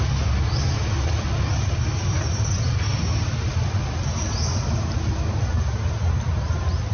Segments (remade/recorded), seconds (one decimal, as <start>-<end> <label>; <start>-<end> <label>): 0.0-6.9 recorded

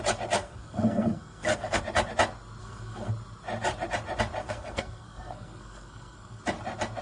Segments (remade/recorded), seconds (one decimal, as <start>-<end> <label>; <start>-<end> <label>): 0.0-0.4 recorded; 0.4-1.8 remade; 1.8-2.6 recorded; 2.6-3.1 remade; 3.1-4.4 recorded; 4.4-6.4 remade; 6.4-7.0 recorded

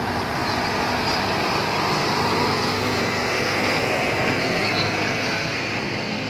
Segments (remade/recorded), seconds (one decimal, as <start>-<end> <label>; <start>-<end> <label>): 0.0-2.4 recorded; 2.4-6.3 remade

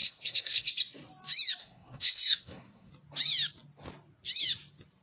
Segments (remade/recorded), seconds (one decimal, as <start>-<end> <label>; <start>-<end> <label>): 0.0-0.7 remade; 0.7-1.6 recorded; 1.6-2.9 remade; 2.9-5.0 recorded

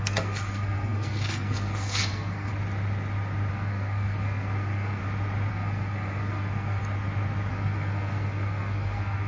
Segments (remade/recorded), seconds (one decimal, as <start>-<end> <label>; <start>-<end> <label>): 0.0-2.5 remade; 2.5-3.5 recorded; 3.5-5.0 remade; 5.0-5.5 recorded; 5.5-6.8 remade; 6.8-7.5 recorded; 7.5-9.3 remade